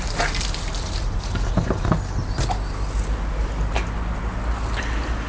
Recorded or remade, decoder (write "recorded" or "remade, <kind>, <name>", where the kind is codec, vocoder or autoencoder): recorded